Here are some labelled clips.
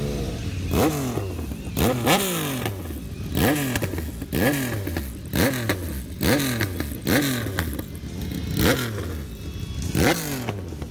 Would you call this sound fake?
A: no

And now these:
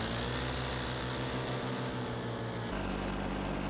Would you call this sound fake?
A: no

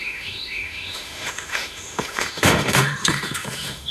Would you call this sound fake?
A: yes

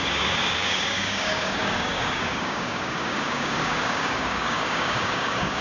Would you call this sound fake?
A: yes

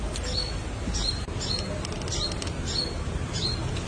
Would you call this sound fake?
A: no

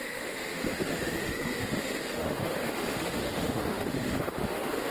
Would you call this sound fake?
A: yes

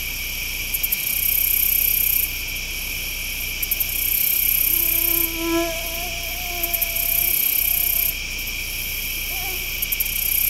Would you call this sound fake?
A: no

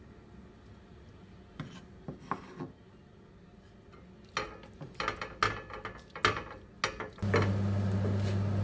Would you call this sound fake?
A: no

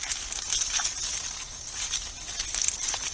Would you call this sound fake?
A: no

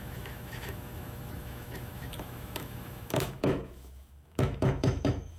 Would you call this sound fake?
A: yes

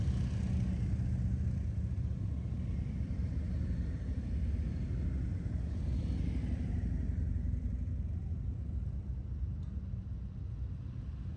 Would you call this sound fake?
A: no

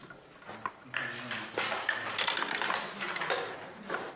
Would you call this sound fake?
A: no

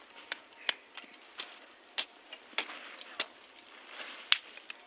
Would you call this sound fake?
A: no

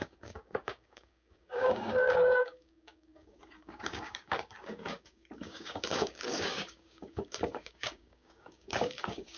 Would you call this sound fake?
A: yes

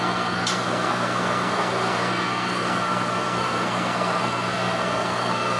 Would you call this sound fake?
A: yes